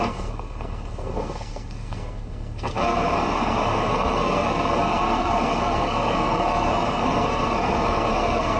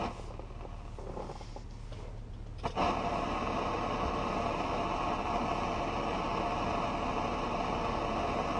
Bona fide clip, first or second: second